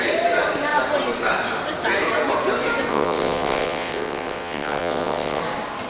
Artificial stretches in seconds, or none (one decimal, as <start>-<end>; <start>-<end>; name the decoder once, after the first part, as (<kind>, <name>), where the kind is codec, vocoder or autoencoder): 2.9-5.4 (vocoder, WaveNeXt)